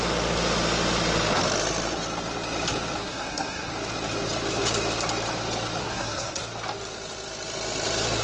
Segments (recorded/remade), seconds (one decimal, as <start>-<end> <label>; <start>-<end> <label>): 0.0-3.0 recorded; 3.0-3.7 remade; 3.7-5.8 recorded; 5.8-6.4 remade; 6.4-8.2 recorded